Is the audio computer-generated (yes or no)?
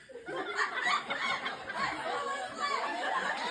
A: no